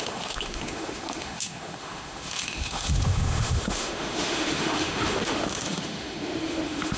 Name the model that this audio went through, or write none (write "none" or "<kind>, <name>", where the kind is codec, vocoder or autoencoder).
autoencoder, DAC-VAE